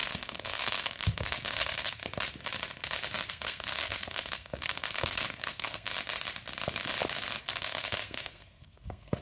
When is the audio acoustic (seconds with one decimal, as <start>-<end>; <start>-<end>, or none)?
2.0-3.3; 5.9-7.4